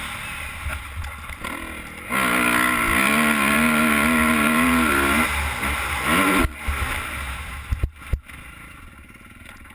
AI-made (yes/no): no